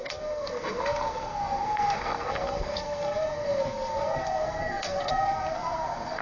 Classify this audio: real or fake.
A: fake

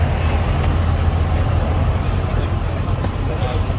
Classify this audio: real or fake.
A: real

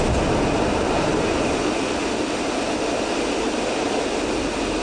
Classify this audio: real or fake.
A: real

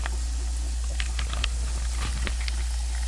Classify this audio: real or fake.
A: real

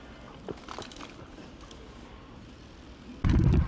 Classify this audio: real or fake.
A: real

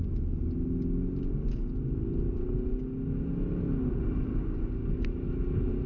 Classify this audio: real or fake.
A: real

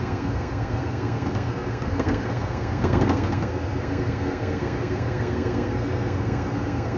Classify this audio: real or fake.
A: fake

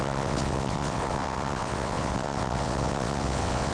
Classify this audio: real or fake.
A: fake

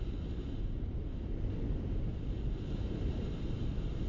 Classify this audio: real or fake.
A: real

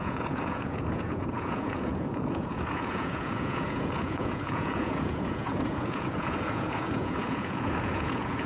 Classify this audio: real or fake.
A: fake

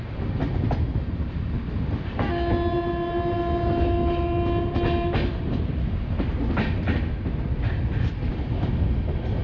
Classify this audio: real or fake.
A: real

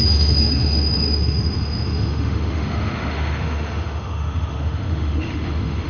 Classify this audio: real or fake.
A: fake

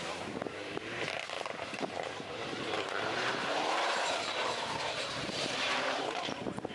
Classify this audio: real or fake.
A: fake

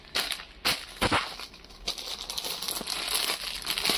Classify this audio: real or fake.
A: real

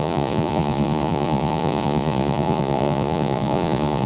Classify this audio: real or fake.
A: fake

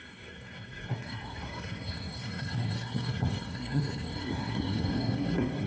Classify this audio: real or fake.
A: fake